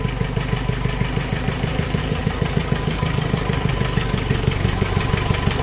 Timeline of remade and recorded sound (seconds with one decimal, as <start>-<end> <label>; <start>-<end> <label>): 0.0-2.0 recorded; 2.0-4.9 remade; 4.9-5.6 recorded